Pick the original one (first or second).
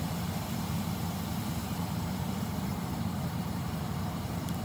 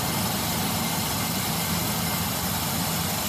second